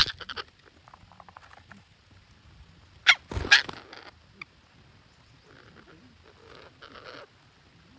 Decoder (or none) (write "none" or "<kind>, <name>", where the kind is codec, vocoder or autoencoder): none